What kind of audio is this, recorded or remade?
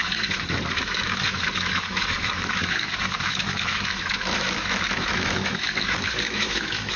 remade